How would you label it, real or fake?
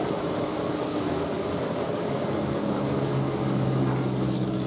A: fake